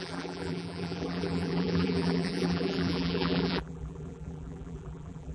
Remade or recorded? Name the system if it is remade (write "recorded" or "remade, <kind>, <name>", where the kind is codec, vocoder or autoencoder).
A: remade, vocoder, BigVGAN v2